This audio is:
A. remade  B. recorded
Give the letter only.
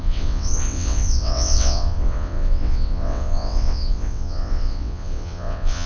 A